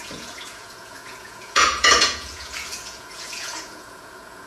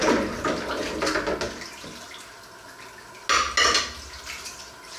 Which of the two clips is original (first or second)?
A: second